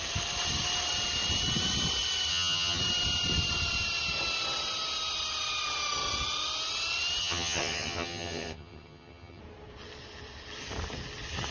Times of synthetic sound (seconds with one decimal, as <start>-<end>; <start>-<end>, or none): 2.3-2.8; 7.2-9.4